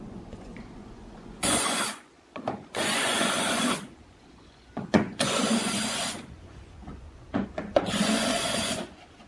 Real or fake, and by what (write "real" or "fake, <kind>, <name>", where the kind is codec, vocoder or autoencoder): fake, vocoder, Vocos